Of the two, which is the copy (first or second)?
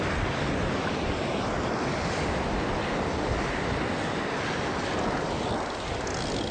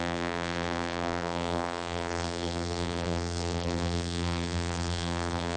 second